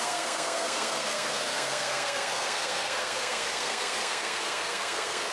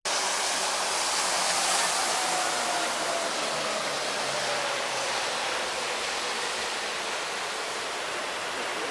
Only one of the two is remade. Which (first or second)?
first